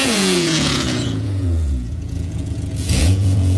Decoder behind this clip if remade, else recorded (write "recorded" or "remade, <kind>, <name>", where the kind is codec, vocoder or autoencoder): remade, vocoder, Vocos